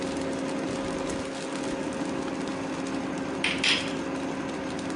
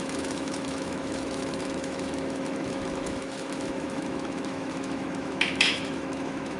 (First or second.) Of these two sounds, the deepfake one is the second